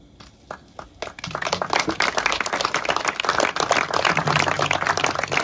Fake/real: real